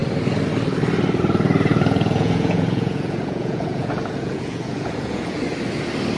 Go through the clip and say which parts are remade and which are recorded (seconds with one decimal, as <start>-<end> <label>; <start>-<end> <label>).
0.0-1.7 recorded; 1.7-5.4 remade; 5.4-6.2 recorded